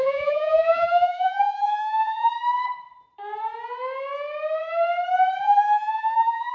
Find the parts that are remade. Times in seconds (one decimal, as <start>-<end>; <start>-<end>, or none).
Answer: 0.0-2.3; 5.4-6.5

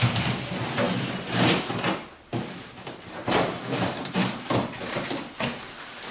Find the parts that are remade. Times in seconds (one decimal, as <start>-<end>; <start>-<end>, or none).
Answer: 2.3-4.2

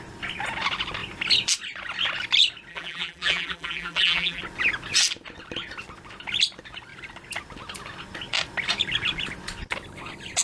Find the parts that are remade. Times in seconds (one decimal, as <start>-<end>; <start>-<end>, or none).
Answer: 2.7-4.4